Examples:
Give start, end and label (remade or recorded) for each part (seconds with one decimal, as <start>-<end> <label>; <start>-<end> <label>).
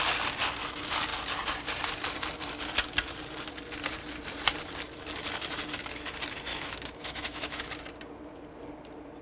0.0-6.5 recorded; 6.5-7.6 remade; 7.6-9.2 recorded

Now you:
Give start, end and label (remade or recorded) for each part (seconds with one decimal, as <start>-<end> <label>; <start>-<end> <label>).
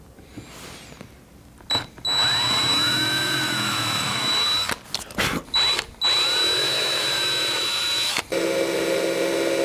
0.0-2.7 recorded; 2.7-4.3 remade; 4.3-6.4 recorded; 6.4-8.2 remade; 8.2-9.6 recorded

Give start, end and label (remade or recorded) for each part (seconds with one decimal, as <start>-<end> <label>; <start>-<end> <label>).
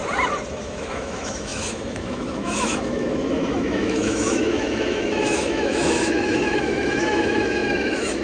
0.0-0.5 recorded; 0.5-8.2 remade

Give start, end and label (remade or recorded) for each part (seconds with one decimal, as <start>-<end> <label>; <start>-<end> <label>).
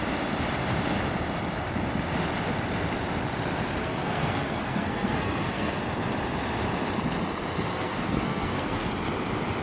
0.0-3.8 recorded; 3.8-5.8 remade; 5.8-7.7 recorded; 7.7-8.9 remade; 8.9-9.6 recorded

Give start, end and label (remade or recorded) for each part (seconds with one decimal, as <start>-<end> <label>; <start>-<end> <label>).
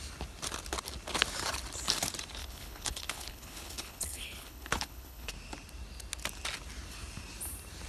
0.0-2.4 recorded; 2.4-5.3 remade; 5.3-7.9 recorded